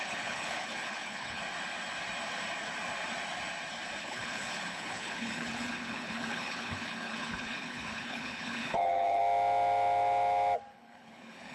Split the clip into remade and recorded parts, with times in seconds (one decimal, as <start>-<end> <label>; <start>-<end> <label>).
0.0-1.4 remade; 1.4-4.0 recorded; 4.0-9.2 remade; 9.2-10.7 recorded; 10.7-11.5 remade